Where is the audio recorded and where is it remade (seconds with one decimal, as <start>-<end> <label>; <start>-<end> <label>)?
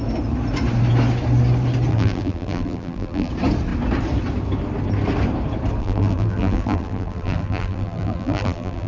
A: 0.0-1.9 recorded; 1.9-3.3 remade; 3.3-5.8 recorded; 5.8-8.9 remade